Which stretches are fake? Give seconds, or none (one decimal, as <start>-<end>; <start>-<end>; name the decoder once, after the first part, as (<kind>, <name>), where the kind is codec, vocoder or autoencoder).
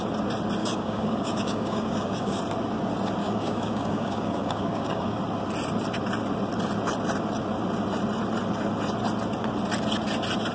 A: 0.6-2.4 (codec, DAC); 3.2-5.2